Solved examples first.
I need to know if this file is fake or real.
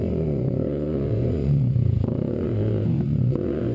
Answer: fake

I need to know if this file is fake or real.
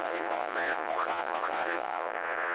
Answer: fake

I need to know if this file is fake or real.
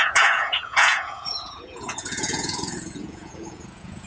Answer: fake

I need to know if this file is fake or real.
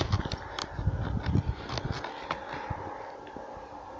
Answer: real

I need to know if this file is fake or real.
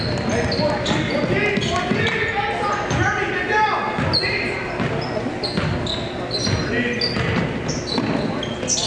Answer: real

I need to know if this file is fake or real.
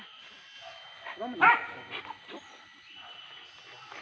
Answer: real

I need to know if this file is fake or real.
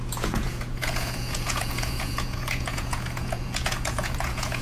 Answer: fake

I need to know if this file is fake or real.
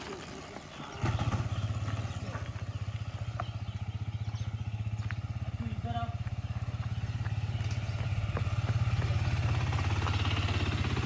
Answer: real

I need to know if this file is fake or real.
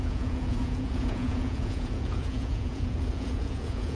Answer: fake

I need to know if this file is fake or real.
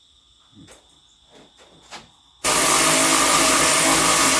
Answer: real